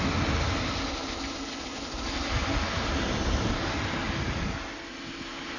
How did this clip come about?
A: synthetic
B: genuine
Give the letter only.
B